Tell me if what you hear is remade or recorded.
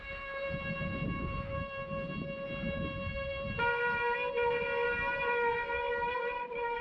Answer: recorded